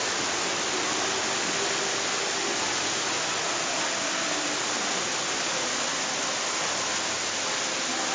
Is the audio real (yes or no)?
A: yes